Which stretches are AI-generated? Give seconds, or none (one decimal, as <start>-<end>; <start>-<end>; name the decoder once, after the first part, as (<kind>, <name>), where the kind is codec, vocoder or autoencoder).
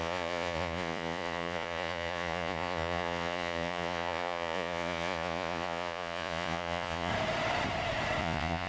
0.0-7.1 (vocoder, Vocos); 8.2-8.7